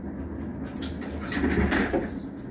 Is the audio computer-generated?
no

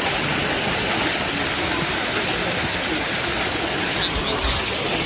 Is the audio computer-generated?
no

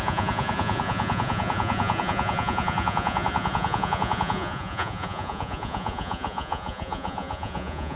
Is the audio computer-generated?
yes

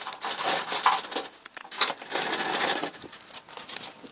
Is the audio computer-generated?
no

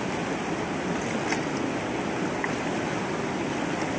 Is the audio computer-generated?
no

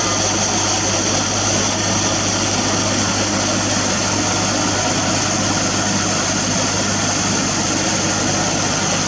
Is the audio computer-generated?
no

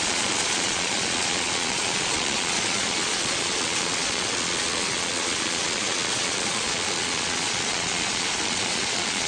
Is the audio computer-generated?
yes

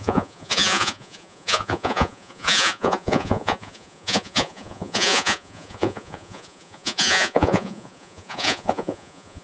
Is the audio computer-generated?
yes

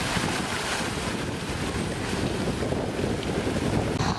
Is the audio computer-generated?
no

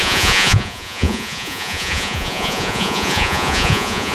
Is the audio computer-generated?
yes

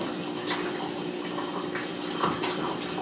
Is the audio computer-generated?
no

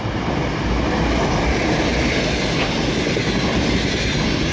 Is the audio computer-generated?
no